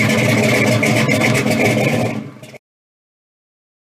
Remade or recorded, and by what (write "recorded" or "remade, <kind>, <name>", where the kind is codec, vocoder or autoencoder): recorded